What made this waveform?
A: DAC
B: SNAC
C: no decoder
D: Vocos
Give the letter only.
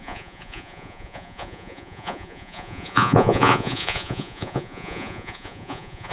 D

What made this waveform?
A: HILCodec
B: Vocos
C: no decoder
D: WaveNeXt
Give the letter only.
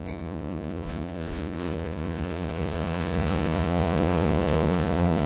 B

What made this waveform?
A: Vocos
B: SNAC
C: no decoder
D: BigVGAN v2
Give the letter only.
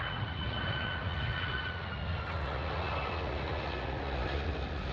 A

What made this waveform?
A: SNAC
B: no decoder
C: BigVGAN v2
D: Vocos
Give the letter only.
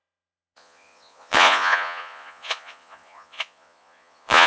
D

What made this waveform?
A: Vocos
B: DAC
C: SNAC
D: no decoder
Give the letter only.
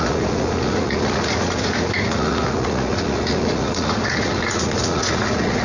A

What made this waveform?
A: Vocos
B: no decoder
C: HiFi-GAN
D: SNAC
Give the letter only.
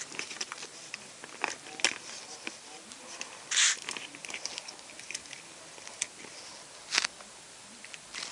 B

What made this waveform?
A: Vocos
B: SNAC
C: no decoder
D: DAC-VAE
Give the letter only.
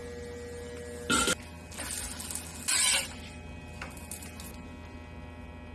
C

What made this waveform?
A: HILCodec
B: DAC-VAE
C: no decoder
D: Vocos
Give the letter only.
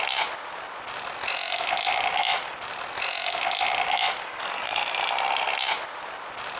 C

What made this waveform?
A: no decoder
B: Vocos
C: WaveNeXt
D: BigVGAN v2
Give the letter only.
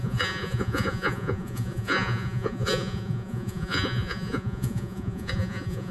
B